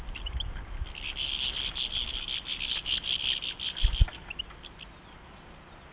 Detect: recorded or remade recorded